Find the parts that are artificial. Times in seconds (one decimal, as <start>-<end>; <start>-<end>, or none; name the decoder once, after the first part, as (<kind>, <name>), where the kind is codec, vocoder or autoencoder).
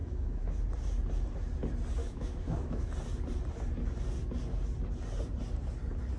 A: 0.0-0.6 (autoencoder, DAC-VAE); 2.0-2.9